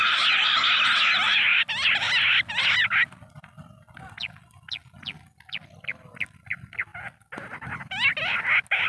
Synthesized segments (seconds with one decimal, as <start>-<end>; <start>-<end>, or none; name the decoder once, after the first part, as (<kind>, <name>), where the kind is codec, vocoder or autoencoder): none